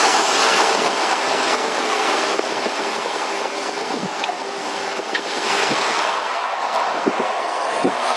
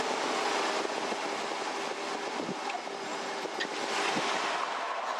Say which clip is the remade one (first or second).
first